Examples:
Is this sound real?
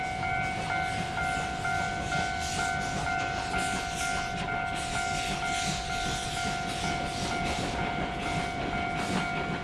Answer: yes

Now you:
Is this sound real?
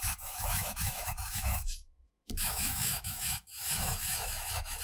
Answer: no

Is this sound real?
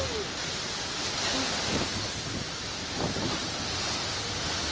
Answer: yes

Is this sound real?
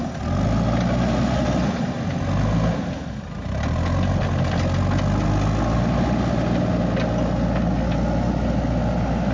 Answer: yes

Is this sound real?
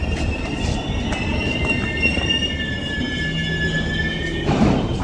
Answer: yes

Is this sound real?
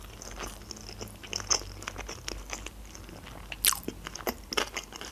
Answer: yes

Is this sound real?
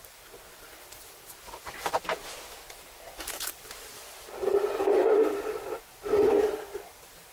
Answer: yes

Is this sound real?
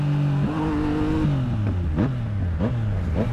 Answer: yes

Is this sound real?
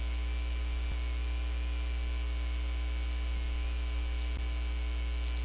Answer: yes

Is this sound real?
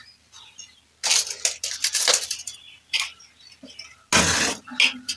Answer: yes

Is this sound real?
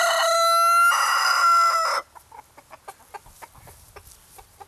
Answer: yes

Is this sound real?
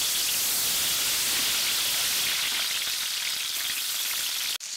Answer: yes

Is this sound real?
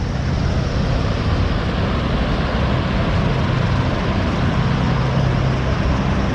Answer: yes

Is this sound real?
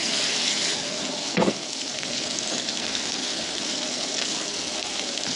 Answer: no